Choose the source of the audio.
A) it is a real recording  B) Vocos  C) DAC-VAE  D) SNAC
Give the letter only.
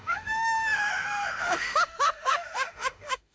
C